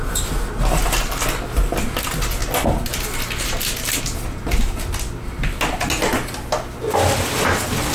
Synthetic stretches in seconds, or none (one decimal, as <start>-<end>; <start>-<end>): none